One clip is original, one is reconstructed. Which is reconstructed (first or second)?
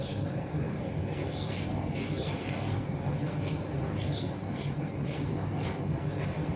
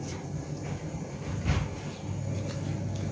first